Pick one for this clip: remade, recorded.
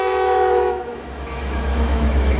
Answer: remade